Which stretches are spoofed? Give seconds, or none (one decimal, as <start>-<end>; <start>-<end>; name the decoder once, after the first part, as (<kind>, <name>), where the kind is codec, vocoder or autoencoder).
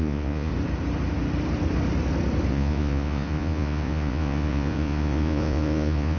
0.0-0.5 (vocoder, Vocos); 2.5-6.2